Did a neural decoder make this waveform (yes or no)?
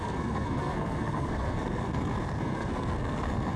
yes